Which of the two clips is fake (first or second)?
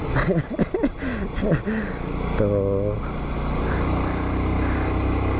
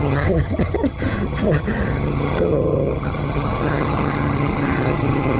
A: second